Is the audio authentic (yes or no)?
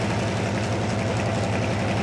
yes